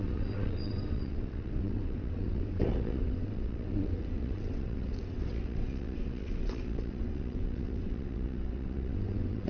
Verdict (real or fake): fake